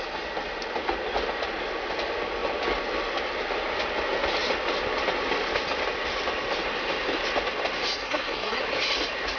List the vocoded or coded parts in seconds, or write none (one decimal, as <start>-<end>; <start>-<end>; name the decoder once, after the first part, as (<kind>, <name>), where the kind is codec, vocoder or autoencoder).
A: 8.0-8.6 (codec, SNAC)